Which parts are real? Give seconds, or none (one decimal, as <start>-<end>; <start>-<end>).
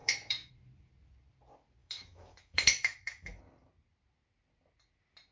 0.5-1.8; 3.4-5.3